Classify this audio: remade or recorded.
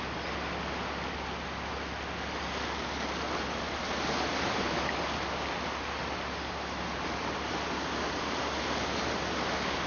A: recorded